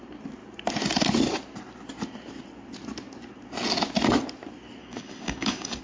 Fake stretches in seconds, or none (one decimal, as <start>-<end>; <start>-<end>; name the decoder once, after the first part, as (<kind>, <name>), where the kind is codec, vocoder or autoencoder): 4.8-5.8 (codec, DAC)